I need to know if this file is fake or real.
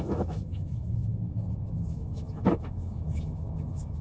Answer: fake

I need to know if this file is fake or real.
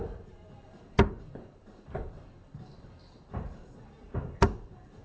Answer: fake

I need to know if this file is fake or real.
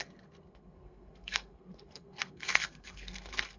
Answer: fake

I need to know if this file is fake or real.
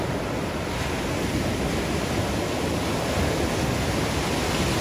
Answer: real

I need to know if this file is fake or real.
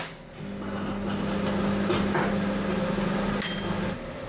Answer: real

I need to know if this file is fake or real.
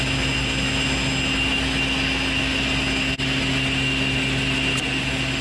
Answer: real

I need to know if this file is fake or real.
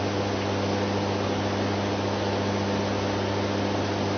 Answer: real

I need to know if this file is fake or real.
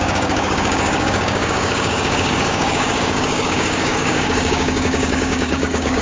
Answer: fake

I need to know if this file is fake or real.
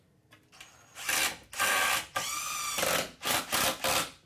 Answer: real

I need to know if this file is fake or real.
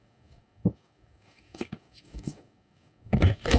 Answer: fake